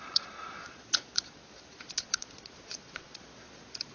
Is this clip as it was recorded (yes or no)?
no